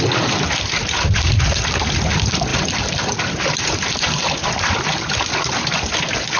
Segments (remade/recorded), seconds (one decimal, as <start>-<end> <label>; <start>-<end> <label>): 0.0-2.5 recorded; 2.5-3.3 remade; 3.3-6.4 recorded